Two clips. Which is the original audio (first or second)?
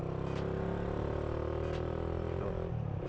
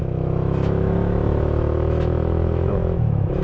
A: first